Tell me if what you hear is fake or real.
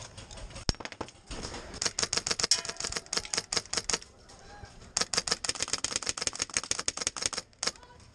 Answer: real